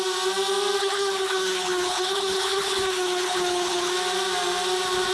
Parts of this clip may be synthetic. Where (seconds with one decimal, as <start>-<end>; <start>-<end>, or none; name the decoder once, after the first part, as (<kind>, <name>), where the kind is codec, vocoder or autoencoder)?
0.8-3.9 (codec, HILCodec)